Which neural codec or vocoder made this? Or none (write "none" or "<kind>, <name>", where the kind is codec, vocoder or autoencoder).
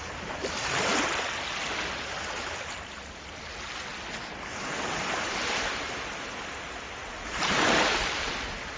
none